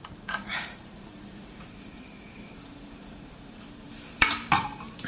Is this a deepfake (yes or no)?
yes